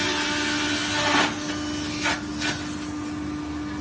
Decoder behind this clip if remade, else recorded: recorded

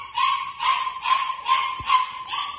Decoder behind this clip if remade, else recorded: remade, vocoder, BigVGAN v2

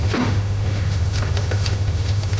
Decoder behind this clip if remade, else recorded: remade, autoencoder, DAC-VAE